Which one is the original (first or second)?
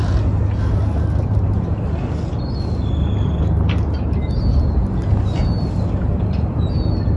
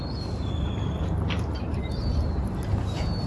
first